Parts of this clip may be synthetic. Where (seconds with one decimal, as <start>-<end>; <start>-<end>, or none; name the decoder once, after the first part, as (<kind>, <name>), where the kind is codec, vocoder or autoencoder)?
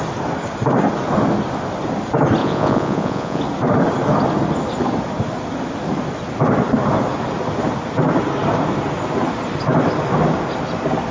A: 2.4-3.4 (vocoder, Vocos)